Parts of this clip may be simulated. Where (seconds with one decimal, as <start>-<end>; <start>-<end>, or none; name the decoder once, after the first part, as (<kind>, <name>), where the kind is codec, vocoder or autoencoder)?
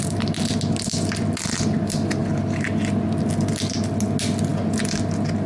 none